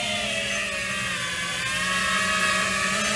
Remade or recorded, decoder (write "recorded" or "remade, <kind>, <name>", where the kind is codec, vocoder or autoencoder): recorded